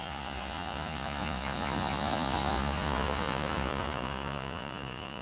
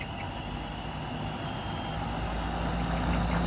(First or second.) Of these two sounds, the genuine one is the second